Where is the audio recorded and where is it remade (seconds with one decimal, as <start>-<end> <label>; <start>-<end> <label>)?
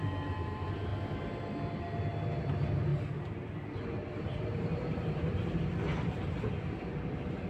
0.0-0.9 remade; 0.9-2.4 recorded; 2.4-2.9 remade; 2.9-4.2 recorded; 4.2-5.6 remade; 5.6-7.5 recorded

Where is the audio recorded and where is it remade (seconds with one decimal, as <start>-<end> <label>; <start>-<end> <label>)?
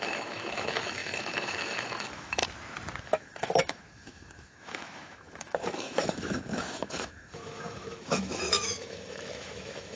0.0-2.4 remade; 2.4-3.0 recorded; 3.0-10.0 remade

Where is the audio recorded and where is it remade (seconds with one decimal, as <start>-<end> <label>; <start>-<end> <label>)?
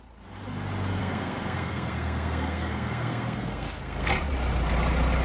0.0-1.0 recorded; 1.0-4.1 remade; 4.1-5.2 recorded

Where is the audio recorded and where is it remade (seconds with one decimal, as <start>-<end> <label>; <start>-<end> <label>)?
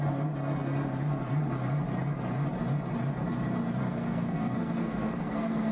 0.0-3.8 recorded; 3.8-5.7 remade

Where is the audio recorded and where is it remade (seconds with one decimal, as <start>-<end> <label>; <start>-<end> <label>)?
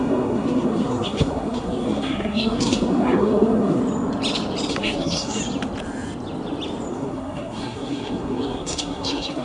0.0-3.8 remade; 3.8-4.7 recorded; 4.7-5.4 remade; 5.4-6.9 recorded; 6.9-9.4 remade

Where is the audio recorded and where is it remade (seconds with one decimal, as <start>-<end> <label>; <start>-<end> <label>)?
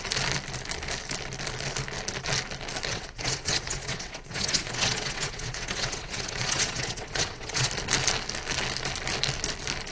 0.0-2.9 recorded; 2.9-7.7 remade; 7.7-9.9 recorded